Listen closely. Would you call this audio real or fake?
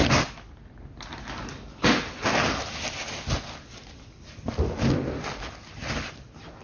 real